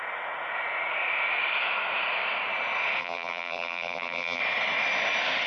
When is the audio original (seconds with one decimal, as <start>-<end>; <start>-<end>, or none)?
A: 0.0-3.0; 4.4-5.5